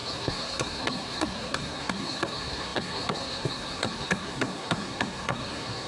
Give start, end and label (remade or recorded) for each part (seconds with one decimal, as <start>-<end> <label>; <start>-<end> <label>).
0.0-5.9 remade